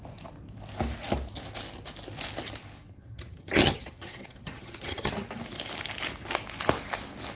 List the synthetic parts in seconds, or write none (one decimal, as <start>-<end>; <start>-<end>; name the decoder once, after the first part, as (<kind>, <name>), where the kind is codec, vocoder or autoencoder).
2.9-5.1 (vocoder, HiFi-GAN)